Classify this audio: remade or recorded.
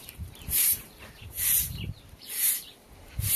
remade